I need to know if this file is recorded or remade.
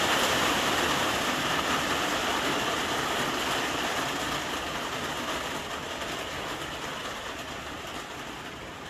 recorded